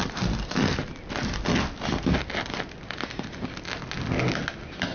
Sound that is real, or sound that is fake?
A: real